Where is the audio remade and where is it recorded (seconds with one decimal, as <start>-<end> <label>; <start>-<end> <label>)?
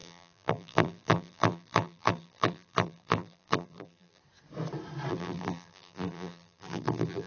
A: 0.0-4.2 remade; 4.2-5.1 recorded; 5.1-7.3 remade